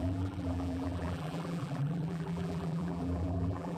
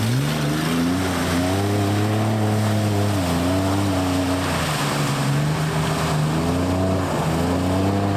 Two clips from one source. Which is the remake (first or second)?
first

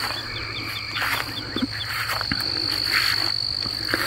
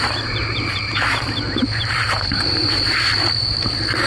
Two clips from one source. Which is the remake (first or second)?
second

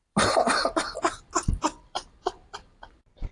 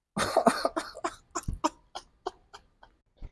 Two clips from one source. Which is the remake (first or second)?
first